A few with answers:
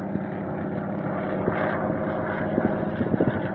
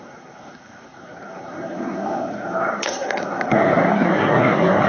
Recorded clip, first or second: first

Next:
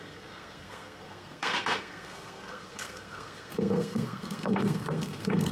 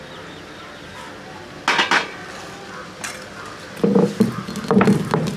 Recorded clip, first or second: second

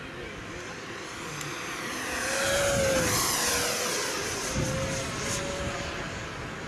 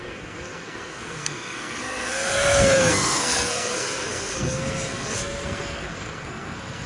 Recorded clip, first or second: first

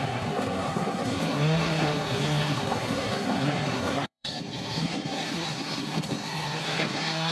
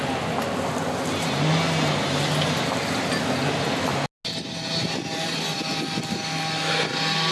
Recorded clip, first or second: second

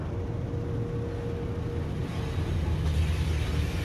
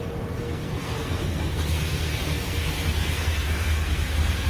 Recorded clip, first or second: first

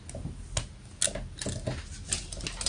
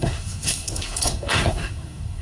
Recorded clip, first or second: first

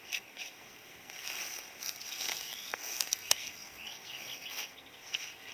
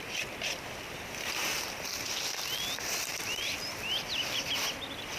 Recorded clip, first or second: second